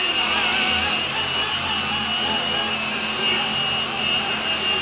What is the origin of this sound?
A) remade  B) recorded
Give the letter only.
B